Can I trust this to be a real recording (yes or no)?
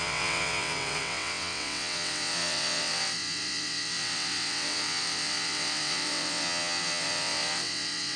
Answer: no